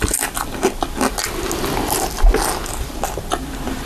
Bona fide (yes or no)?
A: yes